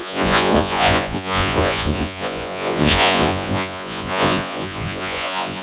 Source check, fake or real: fake